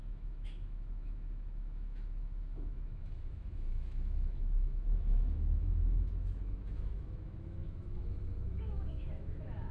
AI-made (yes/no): yes